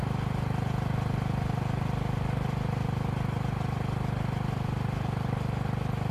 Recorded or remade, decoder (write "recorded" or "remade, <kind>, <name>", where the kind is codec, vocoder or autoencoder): recorded